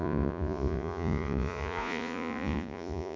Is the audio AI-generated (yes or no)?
yes